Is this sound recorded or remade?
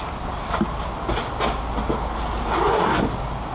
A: recorded